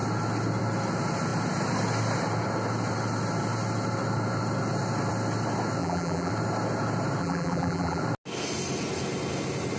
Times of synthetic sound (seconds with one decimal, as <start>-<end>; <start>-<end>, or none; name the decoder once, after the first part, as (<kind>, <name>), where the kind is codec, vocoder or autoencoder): 5.8-6.3 (vocoder, BigVGAN v2); 7.2-8.0